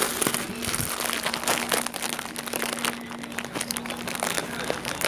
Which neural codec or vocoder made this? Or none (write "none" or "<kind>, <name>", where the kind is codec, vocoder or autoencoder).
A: none